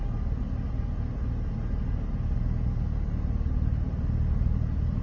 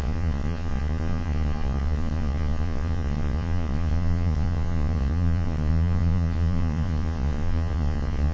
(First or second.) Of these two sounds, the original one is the first